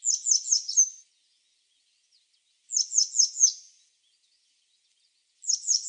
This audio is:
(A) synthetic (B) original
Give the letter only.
B